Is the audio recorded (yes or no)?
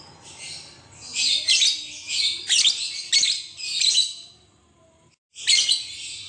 yes